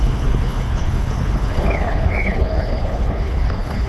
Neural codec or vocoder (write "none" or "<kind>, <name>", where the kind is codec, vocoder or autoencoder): codec, HILCodec